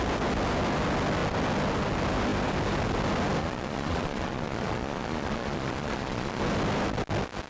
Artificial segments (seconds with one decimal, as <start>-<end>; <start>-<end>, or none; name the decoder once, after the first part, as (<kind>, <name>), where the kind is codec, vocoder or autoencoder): 3.4-6.4 (vocoder, Vocos)